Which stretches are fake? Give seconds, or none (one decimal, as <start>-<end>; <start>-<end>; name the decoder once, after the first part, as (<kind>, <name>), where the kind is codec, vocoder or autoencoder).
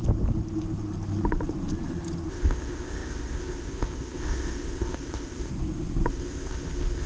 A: 2.3-5.5 (codec, ZipCodec); 6.1-7.1